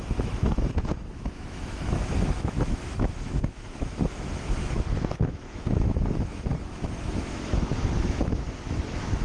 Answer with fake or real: fake